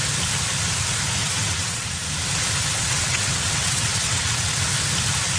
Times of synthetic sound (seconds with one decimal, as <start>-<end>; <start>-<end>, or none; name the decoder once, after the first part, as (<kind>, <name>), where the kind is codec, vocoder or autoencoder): 1.2-1.9 (vocoder, WaveNeXt); 2.8-4.6